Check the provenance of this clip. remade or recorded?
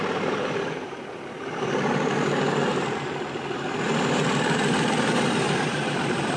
remade